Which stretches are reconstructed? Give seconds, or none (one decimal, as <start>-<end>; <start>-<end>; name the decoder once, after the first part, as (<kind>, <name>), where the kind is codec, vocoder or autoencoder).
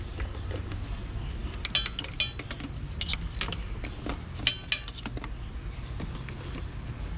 none